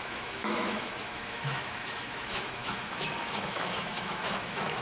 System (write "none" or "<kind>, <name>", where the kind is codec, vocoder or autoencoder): autoencoder, DAC-VAE